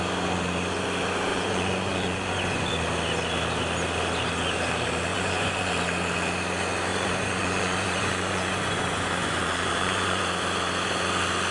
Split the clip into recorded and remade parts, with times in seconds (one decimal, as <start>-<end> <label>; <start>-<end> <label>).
0.0-1.3 recorded; 1.3-2.7 remade; 2.7-5.1 recorded; 5.1-5.7 remade; 5.7-6.9 recorded; 6.9-10.2 remade; 10.2-11.5 recorded